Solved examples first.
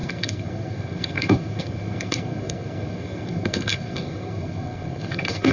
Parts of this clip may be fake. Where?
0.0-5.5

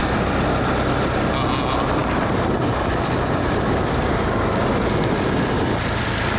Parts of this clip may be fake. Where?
2.0-2.6

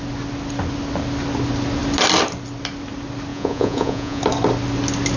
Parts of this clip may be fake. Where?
3.3-4.2

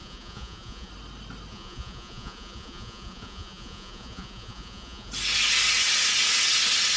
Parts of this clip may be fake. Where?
0.0-0.9; 1.5-5.1

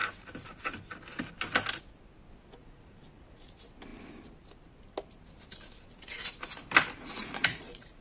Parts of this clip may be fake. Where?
2.6-3.5; 7.2-8.0

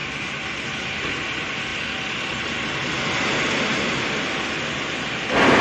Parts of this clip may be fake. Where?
none